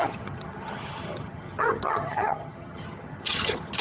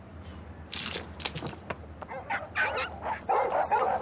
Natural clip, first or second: second